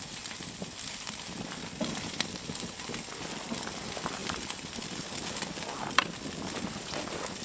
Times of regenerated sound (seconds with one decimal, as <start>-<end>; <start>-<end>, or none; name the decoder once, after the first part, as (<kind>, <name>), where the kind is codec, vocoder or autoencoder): none